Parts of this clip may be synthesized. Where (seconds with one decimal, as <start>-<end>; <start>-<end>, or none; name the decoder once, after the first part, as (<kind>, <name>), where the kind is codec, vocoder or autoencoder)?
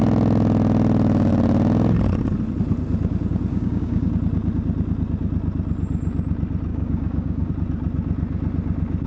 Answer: 3.5-4.1 (codec, DAC); 6.7-7.5